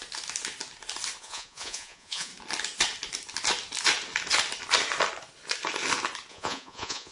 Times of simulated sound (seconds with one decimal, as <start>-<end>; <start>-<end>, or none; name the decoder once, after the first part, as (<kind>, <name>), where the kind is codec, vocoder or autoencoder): 1.2-2.3 (vocoder, Vocos); 6.3-7.1